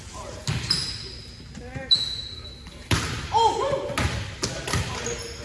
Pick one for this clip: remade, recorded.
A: recorded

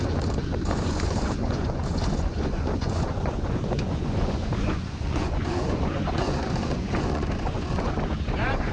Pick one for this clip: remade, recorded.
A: remade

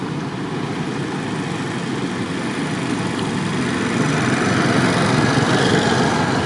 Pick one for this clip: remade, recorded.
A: recorded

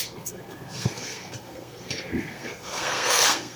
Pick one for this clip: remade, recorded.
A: remade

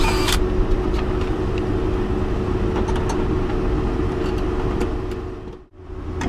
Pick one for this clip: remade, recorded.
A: recorded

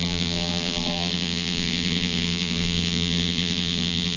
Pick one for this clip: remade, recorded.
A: remade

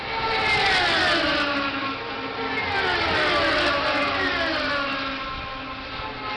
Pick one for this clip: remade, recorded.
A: recorded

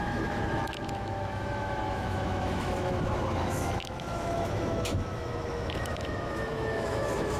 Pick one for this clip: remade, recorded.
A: remade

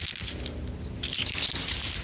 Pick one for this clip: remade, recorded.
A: recorded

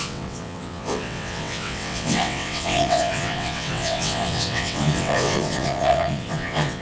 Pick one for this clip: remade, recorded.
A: remade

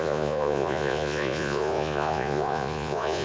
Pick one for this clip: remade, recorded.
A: remade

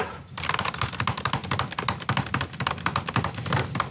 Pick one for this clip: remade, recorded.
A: recorded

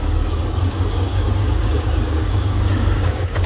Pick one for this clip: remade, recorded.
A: remade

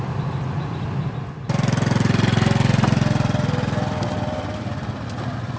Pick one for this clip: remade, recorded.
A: recorded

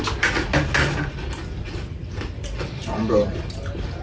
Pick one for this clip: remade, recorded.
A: recorded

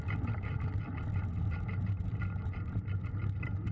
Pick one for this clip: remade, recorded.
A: recorded